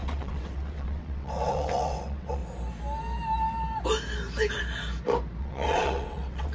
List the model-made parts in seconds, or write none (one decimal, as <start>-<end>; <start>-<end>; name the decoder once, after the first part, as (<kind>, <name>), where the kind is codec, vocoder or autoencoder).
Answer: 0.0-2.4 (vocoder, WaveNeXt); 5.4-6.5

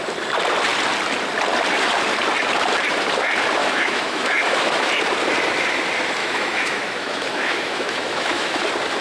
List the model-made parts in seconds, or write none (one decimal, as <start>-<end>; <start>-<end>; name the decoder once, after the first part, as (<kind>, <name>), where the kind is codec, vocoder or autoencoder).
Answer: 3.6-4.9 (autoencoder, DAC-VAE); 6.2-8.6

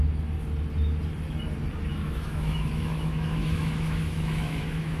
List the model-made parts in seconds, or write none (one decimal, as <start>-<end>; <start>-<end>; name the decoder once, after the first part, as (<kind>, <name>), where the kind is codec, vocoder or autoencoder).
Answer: 1.9-5.0 (autoencoder, DAC-VAE)

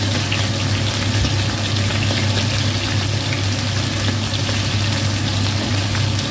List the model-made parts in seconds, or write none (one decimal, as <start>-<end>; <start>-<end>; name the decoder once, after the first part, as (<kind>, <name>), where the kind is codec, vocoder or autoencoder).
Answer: none

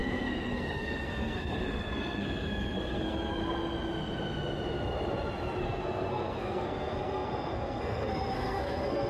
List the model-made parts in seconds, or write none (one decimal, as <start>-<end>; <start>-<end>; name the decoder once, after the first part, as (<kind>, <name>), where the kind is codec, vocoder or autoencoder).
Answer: 0.0-3.4 (codec, SNAC); 5.6-9.1